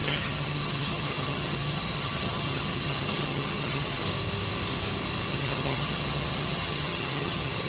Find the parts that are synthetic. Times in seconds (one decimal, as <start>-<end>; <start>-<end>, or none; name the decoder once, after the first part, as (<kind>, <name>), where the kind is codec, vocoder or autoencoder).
0.0-4.0 (vocoder, HiFi-GAN); 5.3-7.7